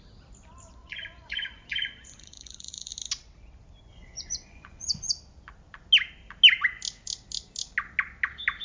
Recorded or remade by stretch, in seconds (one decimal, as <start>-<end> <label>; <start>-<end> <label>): 0.0-0.8 recorded; 0.8-2.9 remade; 2.9-3.9 recorded; 3.9-5.1 remade; 5.1-8.6 recorded